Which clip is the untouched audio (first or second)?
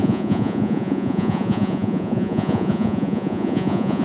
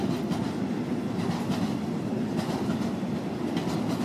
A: second